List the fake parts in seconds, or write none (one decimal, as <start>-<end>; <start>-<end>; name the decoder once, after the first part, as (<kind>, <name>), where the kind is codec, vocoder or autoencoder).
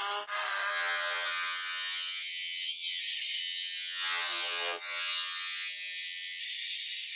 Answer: 0.7-3.0 (vocoder, HiFi-GAN); 3.4-6.4